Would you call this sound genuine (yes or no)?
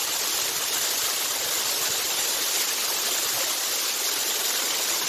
yes